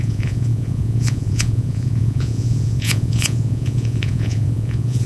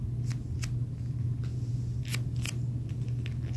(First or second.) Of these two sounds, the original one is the second